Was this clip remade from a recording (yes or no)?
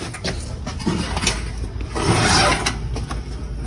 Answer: no